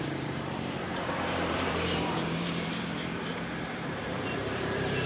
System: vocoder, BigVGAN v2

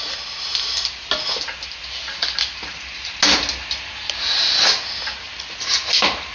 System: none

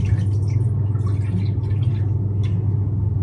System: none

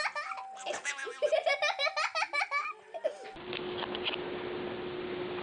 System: none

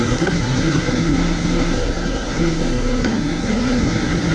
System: codec, SNAC